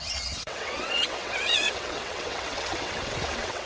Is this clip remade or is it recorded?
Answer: remade